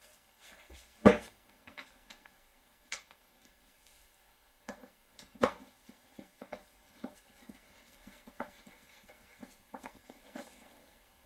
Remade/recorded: remade